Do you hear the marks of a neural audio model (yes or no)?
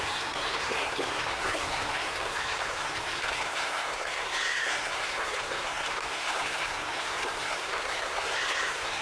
yes